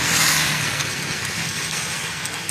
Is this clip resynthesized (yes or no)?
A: yes